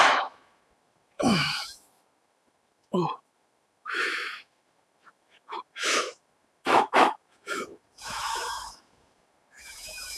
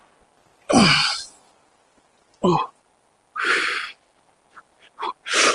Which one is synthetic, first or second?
first